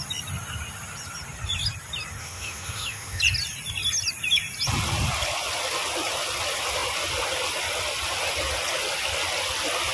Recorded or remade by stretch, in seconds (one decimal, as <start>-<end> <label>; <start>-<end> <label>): 0.0-2.2 recorded; 2.2-3.2 remade; 3.2-9.9 recorded